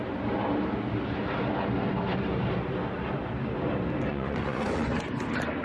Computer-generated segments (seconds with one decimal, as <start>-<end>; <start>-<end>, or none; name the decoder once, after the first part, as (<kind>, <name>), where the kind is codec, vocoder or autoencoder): 4.1-4.9 (vocoder, Vocos)

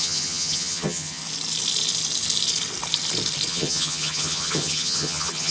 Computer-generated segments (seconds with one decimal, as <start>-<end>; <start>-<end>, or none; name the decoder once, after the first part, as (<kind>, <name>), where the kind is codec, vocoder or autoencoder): 0.0-1.2 (vocoder, HiFi-GAN); 3.5-5.5

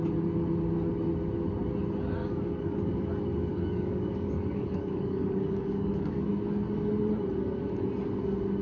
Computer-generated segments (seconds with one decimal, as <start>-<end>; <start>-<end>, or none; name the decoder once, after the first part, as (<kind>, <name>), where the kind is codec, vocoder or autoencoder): 2.2-2.9 (codec, DAC); 3.5-6.3

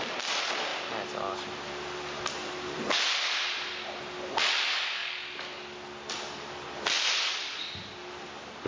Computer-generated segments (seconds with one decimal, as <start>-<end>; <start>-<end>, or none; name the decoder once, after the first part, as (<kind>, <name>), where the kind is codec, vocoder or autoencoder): none

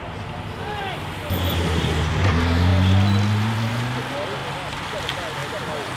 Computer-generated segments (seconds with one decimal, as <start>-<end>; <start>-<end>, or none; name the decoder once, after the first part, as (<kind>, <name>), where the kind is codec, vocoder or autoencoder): none